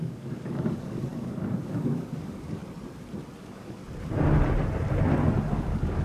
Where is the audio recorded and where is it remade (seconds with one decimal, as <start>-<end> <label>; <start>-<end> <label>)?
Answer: 0.0-2.6 remade; 2.6-3.4 recorded; 3.4-3.8 remade; 3.8-5.5 recorded; 5.5-6.0 remade